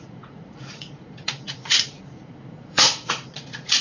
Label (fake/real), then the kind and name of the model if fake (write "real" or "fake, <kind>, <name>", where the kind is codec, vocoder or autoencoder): fake, vocoder, Vocos